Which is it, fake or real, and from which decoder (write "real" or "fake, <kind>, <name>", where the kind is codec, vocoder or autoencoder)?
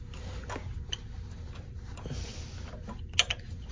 real